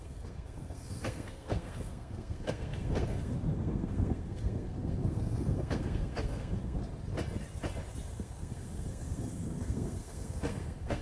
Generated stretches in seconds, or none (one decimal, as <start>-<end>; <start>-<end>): 0.0-6.8; 8.1-11.0